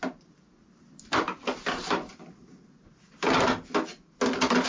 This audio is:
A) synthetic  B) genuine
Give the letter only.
B